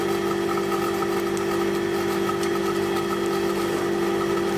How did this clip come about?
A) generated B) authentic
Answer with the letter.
B